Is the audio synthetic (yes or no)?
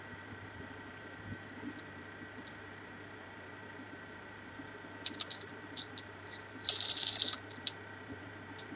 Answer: yes